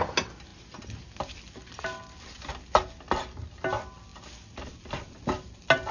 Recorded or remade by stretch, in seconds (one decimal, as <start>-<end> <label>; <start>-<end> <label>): 0.0-5.9 recorded

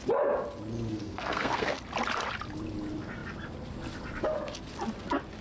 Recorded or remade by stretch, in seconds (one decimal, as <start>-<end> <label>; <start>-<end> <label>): 0.0-1.0 recorded; 1.0-1.8 remade; 1.8-5.4 recorded

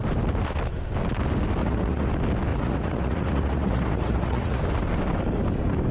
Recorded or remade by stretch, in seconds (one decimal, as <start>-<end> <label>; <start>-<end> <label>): 0.0-1.6 recorded; 1.6-2.1 remade; 2.1-2.5 recorded; 2.5-4.6 remade; 4.6-5.9 recorded

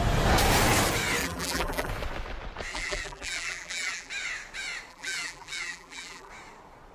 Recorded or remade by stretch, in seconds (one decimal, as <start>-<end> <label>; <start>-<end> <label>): 0.0-1.2 recorded; 1.2-1.9 remade; 1.9-2.7 recorded; 2.7-4.1 remade; 4.1-4.9 recorded; 4.9-6.3 remade; 6.3-6.9 recorded

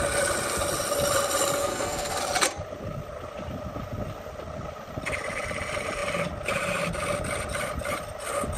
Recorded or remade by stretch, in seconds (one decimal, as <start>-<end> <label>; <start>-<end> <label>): 0.0-1.6 recorded; 1.6-2.2 remade; 2.2-8.6 recorded